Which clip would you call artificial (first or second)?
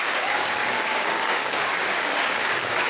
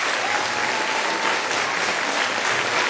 first